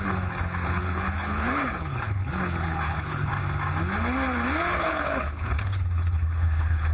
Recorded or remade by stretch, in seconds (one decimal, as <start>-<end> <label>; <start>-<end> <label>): 0.0-3.3 remade; 3.3-4.7 recorded; 4.7-6.9 remade